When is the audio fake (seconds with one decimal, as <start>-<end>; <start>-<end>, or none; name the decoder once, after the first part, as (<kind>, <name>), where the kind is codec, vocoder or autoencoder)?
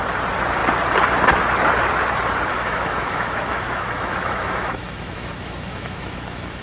2.5-6.6 (autoencoder, DAC-VAE)